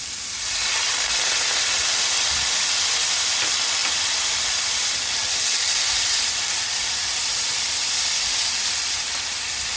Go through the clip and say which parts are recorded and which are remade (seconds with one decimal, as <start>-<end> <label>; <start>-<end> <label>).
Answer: 0.0-9.8 recorded